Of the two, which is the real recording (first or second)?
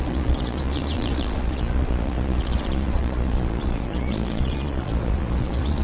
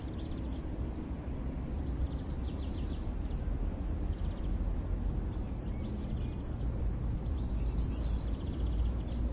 second